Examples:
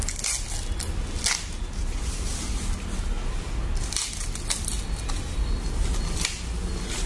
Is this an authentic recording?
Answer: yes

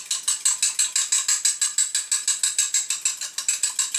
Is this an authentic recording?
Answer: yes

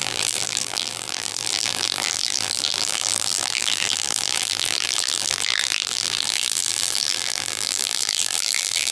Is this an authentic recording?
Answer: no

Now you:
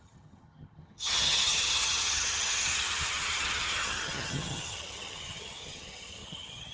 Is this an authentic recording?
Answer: no